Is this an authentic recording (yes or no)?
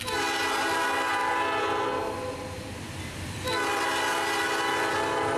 yes